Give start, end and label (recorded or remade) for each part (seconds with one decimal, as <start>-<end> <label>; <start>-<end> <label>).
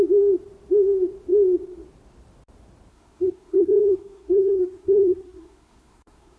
0.0-2.9 recorded; 2.9-6.4 remade